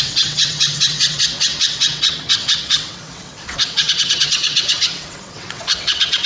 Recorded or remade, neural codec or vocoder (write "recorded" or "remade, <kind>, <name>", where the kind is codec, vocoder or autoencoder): remade, vocoder, WaveNeXt